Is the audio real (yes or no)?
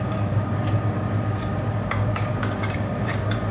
no